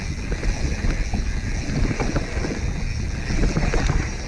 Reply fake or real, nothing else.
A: real